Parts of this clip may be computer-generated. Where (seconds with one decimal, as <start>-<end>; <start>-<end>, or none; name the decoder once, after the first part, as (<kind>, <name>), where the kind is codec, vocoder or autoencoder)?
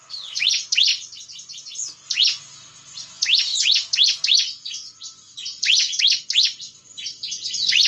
0.0-7.9 (vocoder, Vocos)